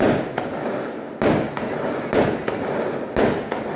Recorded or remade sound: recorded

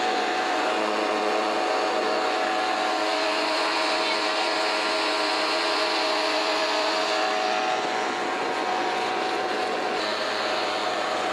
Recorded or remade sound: remade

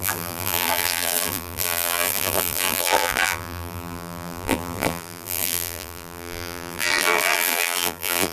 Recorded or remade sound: remade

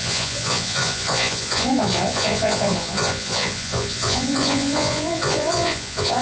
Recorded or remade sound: remade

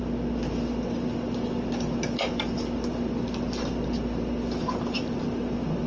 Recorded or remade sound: recorded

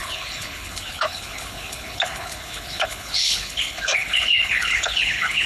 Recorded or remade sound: remade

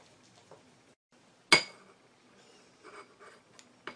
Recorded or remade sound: recorded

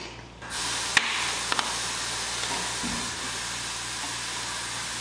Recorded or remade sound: recorded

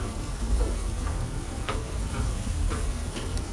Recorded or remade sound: remade